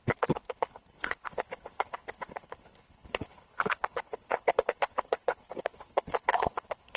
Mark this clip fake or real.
fake